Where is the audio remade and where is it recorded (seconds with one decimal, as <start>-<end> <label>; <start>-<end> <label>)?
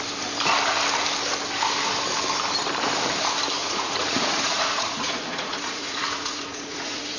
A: 0.0-3.6 recorded; 3.6-7.2 remade